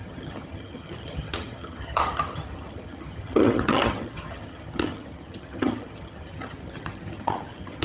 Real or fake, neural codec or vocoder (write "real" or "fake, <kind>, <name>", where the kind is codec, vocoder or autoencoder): fake, vocoder, HiFi-GAN